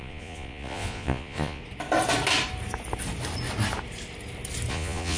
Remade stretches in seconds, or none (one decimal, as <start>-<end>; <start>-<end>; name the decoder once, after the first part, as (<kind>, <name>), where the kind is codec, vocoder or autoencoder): 0.0-1.6 (vocoder, Vocos); 4.7-5.2